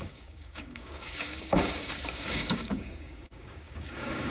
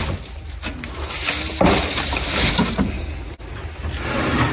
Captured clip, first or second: second